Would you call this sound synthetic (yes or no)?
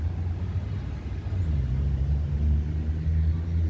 no